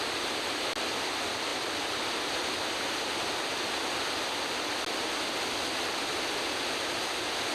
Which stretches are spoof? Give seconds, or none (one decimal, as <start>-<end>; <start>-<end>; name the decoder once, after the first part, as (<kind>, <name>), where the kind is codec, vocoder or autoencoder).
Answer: none

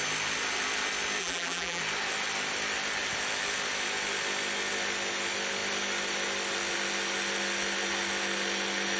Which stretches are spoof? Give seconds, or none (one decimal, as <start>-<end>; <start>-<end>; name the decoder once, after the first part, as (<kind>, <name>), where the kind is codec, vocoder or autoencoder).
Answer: 1.2-1.8 (vocoder, BigVGAN v2)

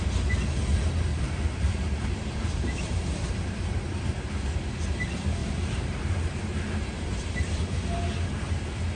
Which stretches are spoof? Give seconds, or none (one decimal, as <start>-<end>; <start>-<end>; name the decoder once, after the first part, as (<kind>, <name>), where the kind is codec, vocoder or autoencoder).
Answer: 1.1-4.2 (vocoder, BigVGAN v2); 5.4-7.6